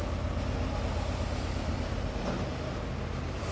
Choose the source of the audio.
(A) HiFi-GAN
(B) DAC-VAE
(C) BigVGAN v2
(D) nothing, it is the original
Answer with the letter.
D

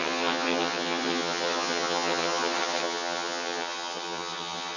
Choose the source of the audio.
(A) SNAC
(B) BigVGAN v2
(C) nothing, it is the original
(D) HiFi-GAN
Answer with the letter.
D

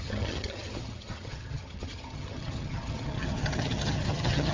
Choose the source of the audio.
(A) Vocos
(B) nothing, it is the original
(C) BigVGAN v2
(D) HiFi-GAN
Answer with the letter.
D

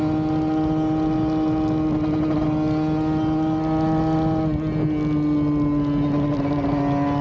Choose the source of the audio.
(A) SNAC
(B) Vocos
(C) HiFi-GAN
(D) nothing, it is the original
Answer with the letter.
D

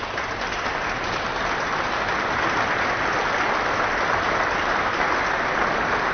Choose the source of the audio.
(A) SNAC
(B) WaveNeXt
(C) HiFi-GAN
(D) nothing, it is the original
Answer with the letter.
D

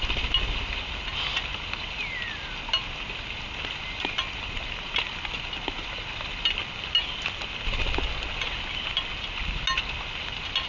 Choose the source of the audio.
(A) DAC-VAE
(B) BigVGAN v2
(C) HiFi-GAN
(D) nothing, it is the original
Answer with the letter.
D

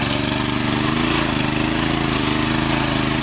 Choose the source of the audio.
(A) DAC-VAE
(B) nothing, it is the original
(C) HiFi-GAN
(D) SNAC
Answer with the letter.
B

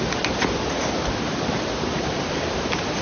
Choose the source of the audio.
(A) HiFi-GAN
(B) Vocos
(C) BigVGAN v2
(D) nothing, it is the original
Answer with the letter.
D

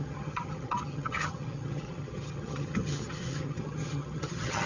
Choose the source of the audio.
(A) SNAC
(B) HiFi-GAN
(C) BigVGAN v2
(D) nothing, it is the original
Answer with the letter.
B